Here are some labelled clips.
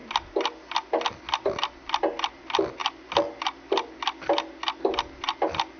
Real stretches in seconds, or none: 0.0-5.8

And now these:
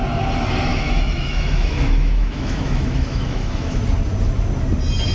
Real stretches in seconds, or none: 0.0-0.7; 3.8-5.1

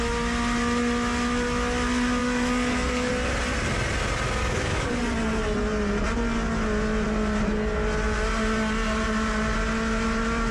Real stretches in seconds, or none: 0.0-2.2; 3.1-4.4; 5.0-10.5

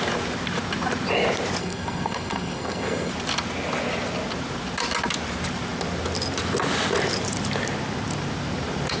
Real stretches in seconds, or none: 0.0-1.6; 3.1-9.0

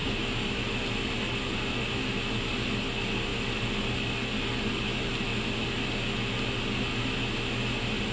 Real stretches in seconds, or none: 0.0-8.1